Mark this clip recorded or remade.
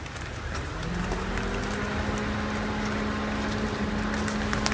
recorded